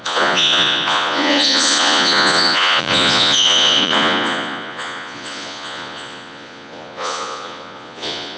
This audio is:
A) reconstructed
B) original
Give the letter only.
A